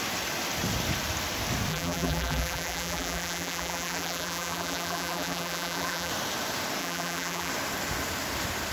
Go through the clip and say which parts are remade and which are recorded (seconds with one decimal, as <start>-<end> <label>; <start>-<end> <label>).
0.0-1.7 recorded; 1.7-6.1 remade; 6.1-6.8 recorded; 6.8-7.5 remade; 7.5-8.7 recorded